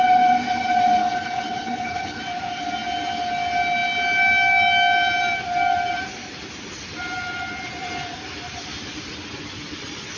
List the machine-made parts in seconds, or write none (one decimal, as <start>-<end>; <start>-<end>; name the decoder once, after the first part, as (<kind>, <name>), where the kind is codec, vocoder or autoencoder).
1.0-2.2 (codec, HILCodec)